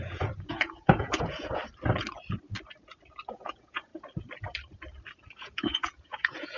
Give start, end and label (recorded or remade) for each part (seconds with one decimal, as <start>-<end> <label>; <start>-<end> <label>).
0.0-1.6 remade; 1.6-3.3 recorded; 3.3-3.9 remade; 3.9-5.3 recorded; 5.3-6.6 remade